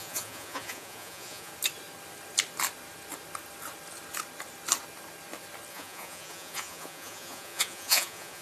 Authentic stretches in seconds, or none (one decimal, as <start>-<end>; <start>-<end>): 1.5-5.7